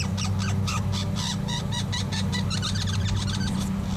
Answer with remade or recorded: remade